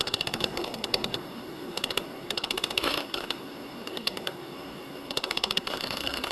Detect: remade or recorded remade